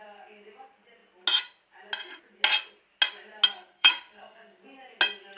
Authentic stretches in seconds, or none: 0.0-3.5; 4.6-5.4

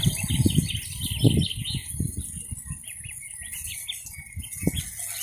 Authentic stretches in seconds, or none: 0.0-5.2